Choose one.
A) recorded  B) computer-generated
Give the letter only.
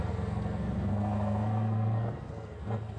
B